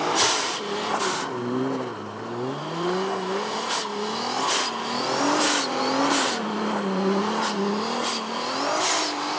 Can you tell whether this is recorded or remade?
recorded